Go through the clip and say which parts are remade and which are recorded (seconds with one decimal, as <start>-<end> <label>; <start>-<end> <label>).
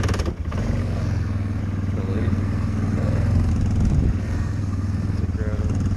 0.0-0.8 recorded; 0.8-1.6 remade; 1.6-2.1 recorded; 2.1-3.5 remade; 3.5-4.2 recorded; 4.2-5.2 remade; 5.2-6.0 recorded